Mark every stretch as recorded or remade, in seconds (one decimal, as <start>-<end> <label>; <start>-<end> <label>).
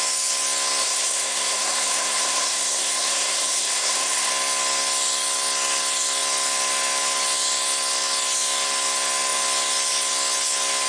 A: 0.0-0.8 recorded; 0.8-4.3 remade; 4.3-10.9 recorded